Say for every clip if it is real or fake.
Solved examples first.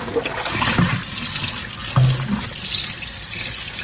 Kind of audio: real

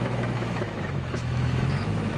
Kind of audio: fake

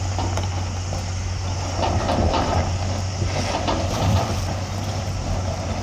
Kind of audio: real